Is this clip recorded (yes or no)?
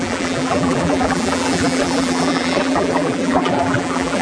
no